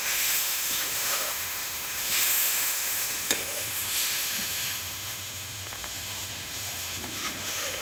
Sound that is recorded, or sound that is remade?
remade